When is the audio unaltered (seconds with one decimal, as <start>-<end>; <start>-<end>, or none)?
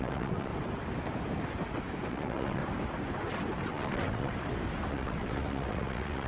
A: 0.5-2.1; 2.6-3.7; 4.3-4.9